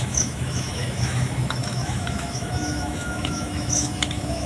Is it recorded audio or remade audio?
remade